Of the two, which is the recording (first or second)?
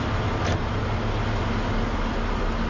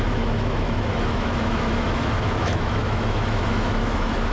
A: first